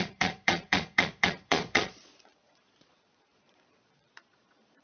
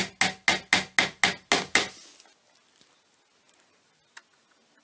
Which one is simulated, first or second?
first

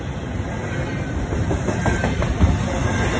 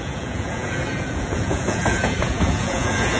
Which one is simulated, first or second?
second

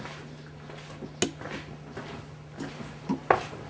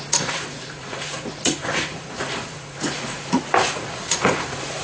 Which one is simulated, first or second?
second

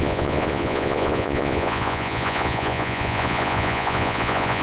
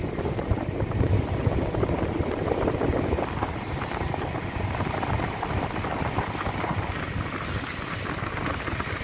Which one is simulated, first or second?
first